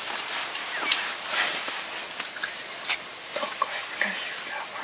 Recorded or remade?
recorded